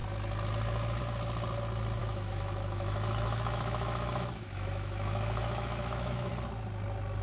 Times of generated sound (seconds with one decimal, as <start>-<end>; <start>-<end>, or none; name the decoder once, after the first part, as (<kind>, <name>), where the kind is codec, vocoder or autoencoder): 2.0-6.3 (autoencoder, DAC-VAE)

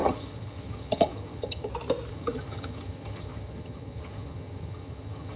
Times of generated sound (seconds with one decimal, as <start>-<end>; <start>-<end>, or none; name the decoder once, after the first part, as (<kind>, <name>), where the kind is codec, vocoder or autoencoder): 0.0-1.7 (vocoder, HiFi-GAN); 2.1-5.4

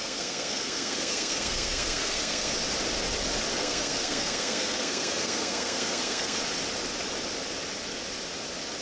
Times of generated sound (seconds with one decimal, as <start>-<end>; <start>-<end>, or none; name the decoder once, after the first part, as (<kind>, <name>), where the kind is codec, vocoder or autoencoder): 0.0-2.6 (codec, SNAC); 3.5-6.4

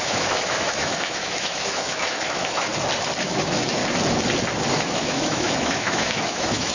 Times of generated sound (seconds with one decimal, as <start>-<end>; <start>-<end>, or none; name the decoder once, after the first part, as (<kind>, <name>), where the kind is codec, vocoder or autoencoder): 0.0-2.7 (autoencoder, DAC-VAE); 3.2-3.8; 4.7-6.7

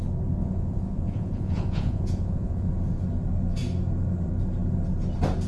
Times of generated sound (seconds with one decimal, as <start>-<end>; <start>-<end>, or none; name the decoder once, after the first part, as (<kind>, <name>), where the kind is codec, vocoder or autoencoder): 0.4-2.7 (vocoder, Vocos)